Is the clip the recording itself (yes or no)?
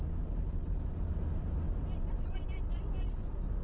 yes